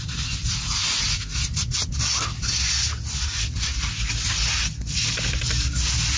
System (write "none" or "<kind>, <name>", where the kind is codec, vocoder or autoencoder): none